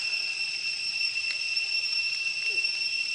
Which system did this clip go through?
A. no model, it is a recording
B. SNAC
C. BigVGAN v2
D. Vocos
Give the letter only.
A